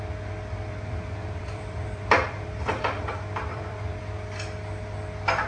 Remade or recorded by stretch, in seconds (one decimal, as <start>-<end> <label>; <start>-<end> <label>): 0.0-0.7 recorded; 0.7-4.0 remade; 4.0-5.5 recorded